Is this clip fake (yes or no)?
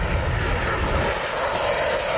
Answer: no